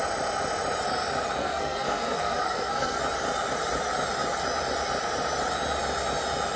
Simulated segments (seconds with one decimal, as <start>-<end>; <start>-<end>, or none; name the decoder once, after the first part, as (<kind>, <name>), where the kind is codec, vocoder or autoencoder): 1.4-3.0 (codec, SNAC)